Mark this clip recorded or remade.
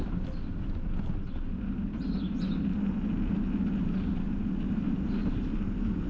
recorded